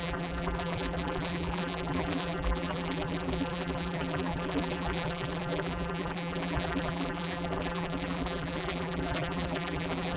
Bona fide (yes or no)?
no